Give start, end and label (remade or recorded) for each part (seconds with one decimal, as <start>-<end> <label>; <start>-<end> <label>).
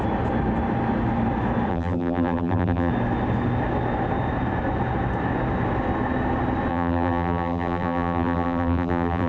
0.0-1.7 recorded; 1.7-2.9 remade; 2.9-6.7 recorded; 6.7-9.3 remade